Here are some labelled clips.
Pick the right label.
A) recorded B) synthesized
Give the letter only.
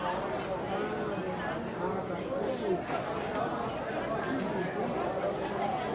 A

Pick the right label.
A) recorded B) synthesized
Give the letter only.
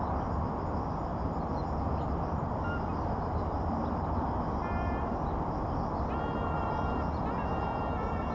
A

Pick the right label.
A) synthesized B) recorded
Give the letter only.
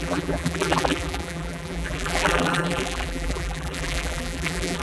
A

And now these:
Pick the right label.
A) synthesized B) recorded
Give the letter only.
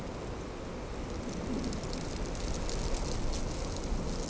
B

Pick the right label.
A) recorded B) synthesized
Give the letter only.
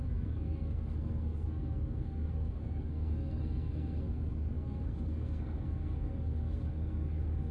B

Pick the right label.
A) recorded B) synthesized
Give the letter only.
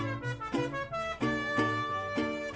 A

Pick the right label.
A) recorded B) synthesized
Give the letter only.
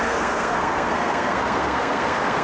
B